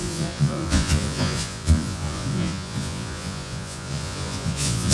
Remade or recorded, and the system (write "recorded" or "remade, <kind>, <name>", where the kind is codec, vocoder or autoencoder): remade, vocoder, Vocos